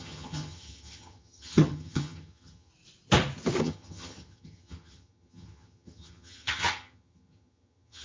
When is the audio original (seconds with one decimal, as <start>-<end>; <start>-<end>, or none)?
2.7-3.6